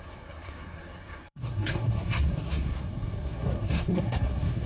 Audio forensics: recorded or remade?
remade